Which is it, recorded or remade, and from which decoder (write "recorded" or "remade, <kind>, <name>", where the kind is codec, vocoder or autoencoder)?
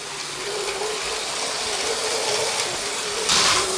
recorded